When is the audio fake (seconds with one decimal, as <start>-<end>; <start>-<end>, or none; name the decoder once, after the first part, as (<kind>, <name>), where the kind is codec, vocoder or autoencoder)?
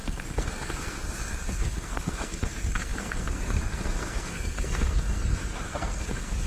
0.0-6.5 (codec, SNAC)